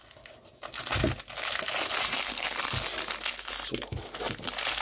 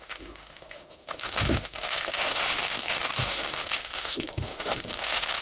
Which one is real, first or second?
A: first